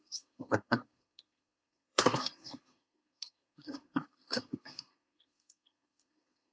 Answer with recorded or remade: remade